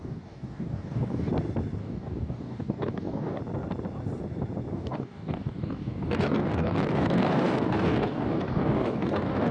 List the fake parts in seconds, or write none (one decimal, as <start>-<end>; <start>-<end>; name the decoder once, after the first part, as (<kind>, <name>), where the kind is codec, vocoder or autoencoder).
0.0-1.3 (codec, DAC); 1.8-3.4; 4.7-9.5